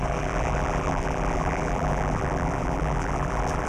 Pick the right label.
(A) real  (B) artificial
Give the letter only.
B